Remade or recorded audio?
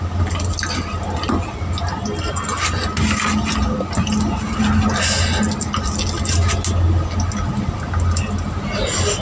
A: recorded